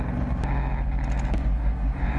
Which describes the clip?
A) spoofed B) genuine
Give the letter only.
B